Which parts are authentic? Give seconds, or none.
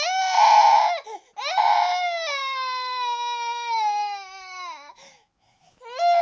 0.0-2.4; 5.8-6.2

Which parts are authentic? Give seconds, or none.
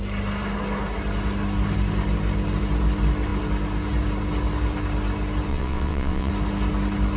0.0-5.5; 6.3-7.2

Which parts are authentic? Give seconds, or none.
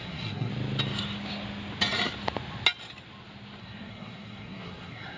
0.5-3.6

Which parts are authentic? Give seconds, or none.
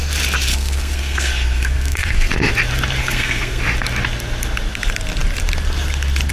0.0-0.5; 2.3-3.0; 3.6-6.3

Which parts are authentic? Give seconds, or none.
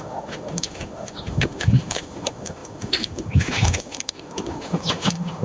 none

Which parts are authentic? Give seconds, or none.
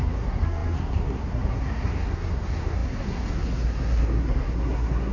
none